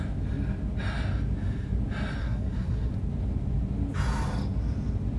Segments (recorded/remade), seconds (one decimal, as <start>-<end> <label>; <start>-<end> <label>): 0.0-2.2 recorded; 2.2-2.9 remade; 2.9-5.2 recorded